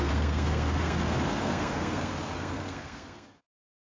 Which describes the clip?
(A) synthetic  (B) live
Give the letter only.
A